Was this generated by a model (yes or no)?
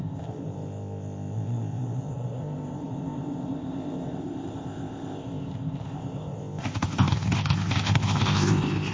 yes